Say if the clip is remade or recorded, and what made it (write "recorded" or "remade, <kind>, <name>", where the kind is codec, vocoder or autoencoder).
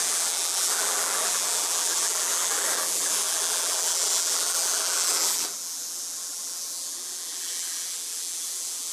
remade, vocoder, BigVGAN v2